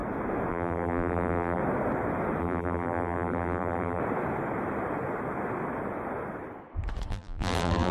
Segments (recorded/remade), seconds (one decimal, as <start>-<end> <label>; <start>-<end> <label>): 0.0-0.5 recorded; 0.5-1.6 remade; 1.6-2.4 recorded; 2.4-4.0 remade; 4.0-7.1 recorded; 7.1-7.9 remade